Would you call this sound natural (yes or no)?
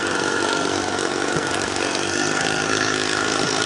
no